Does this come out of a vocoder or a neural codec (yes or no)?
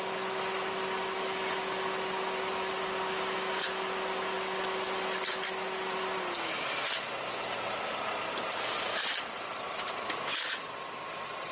no